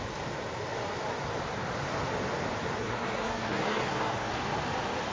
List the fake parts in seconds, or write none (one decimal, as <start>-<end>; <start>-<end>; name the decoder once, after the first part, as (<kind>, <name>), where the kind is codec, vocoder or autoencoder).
2.8-4.3 (codec, SNAC)